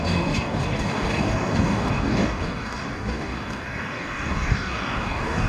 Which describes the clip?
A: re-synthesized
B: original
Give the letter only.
A